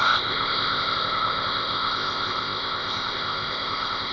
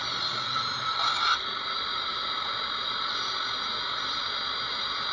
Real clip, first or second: second